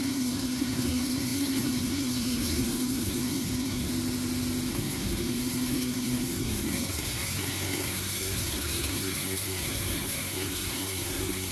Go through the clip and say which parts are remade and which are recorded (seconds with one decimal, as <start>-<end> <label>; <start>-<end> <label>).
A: 0.0-3.9 remade; 3.9-4.7 recorded; 4.7-11.5 remade